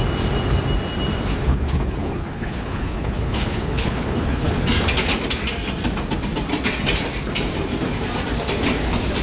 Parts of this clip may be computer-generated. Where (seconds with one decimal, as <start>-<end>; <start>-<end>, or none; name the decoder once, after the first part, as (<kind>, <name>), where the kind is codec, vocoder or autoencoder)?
1.5-4.5 (codec, HILCodec)